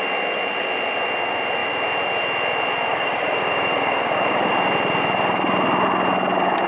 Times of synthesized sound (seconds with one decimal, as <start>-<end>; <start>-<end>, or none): 2.9-4.5